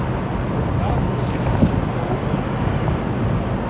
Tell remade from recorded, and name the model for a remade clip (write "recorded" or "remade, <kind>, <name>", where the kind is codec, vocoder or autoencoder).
recorded